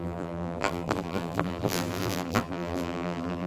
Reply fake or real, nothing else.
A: fake